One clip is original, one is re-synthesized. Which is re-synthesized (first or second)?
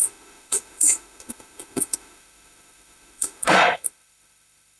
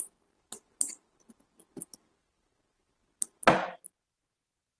first